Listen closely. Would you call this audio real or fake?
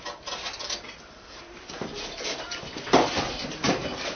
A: real